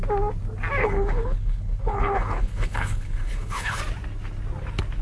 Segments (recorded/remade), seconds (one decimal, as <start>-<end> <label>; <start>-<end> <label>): 0.0-0.8 recorded; 0.8-3.8 remade; 3.8-5.0 recorded